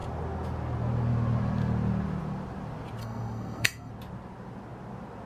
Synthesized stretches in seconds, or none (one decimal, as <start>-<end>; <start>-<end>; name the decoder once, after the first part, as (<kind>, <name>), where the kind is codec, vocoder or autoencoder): 3.0-3.9 (codec, SNAC)